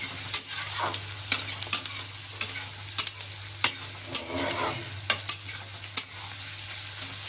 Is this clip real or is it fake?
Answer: real